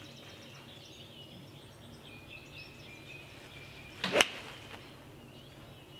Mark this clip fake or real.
real